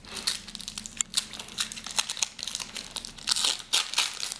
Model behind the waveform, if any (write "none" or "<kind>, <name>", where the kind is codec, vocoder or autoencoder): none